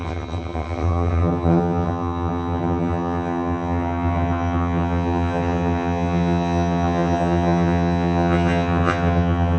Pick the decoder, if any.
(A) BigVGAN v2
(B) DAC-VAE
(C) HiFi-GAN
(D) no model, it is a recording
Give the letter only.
C